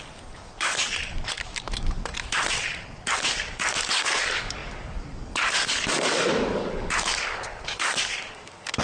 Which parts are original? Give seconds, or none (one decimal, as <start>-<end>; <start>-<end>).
2.1-2.9